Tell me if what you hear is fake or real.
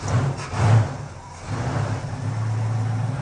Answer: real